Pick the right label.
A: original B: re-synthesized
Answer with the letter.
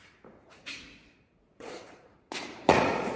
B